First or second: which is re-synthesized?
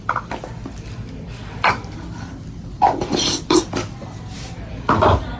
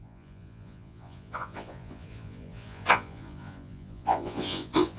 second